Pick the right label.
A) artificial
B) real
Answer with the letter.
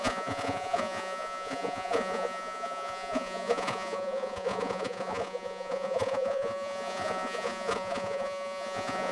A